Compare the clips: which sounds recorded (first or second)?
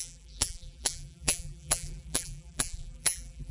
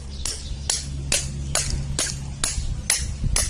second